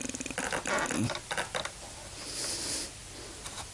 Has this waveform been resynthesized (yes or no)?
no